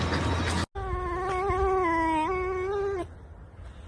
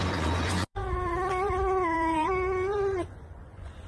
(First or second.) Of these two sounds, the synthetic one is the second